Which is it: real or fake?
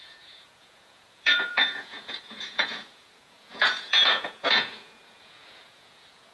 fake